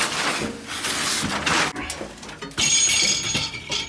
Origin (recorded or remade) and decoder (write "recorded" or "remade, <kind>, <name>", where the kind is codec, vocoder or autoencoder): recorded